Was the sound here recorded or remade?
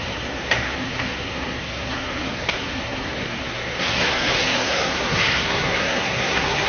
remade